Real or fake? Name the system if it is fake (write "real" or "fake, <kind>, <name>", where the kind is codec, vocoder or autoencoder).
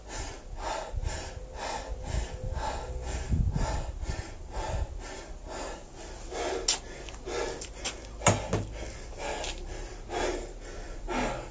real